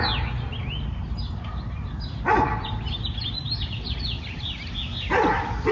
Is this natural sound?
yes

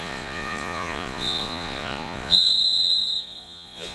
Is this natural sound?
no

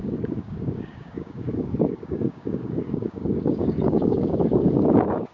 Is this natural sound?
no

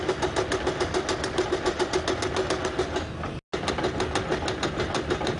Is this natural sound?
yes